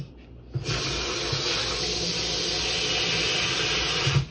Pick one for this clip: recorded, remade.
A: recorded